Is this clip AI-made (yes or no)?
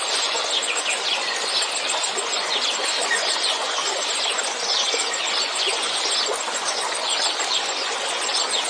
yes